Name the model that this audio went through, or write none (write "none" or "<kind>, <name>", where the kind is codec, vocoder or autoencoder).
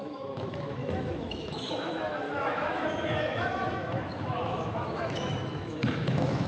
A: autoencoder, DAC-VAE